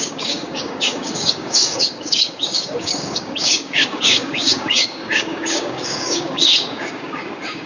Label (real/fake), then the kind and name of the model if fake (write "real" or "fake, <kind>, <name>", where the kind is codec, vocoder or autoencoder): fake, codec, DAC